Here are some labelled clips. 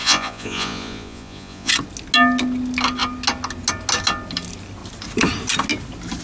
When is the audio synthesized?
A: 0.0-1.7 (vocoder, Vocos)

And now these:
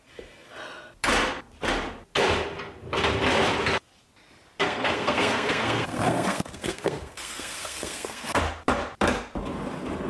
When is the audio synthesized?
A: 4.6-8.4 (codec, SNAC)

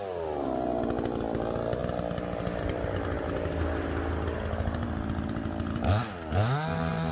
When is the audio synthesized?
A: none